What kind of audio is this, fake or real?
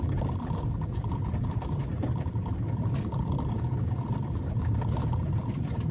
real